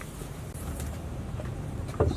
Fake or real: fake